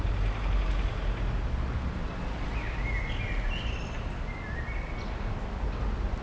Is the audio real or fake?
real